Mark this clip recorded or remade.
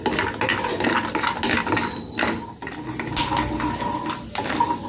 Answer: recorded